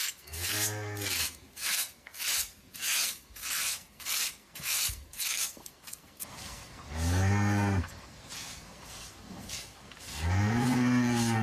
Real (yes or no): no